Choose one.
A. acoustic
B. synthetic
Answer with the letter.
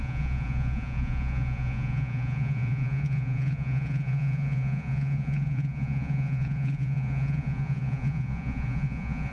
B